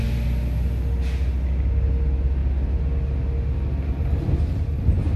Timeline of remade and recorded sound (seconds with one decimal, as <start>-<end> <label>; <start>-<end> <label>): 0.0-5.2 recorded